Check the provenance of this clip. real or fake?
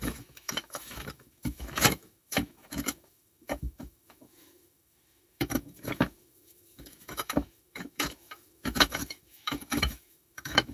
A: fake